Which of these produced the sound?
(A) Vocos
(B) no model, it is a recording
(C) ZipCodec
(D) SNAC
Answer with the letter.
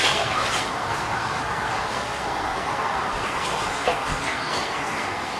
D